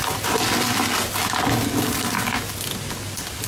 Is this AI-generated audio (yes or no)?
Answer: no